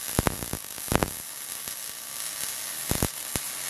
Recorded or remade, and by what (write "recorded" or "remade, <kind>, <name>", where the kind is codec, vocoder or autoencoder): recorded